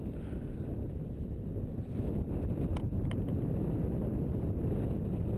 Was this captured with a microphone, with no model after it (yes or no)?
yes